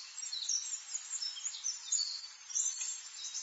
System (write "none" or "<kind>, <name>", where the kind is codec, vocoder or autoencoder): vocoder, BigVGAN v2